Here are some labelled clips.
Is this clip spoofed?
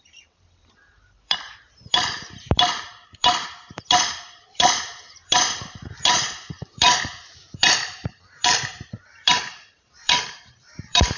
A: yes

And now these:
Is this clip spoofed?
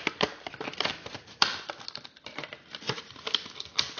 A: no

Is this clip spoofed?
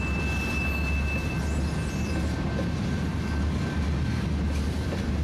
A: no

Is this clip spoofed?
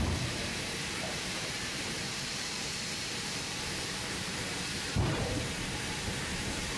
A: yes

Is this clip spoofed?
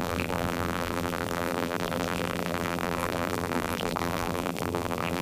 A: yes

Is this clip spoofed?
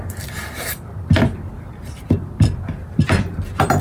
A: yes